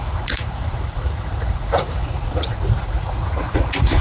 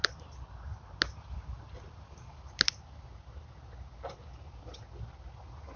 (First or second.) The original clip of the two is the second